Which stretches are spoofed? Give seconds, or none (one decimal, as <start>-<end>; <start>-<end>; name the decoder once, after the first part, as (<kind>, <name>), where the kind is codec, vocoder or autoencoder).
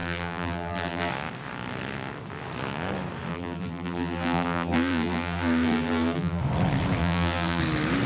0.0-1.1 (vocoder, BigVGAN v2); 3.3-6.4; 7.0-7.6